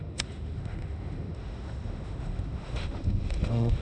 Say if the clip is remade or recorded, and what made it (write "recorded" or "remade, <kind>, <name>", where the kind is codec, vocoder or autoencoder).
remade, autoencoder, DAC-VAE